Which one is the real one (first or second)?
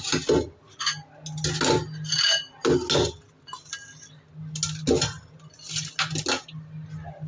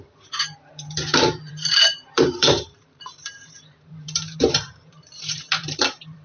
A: first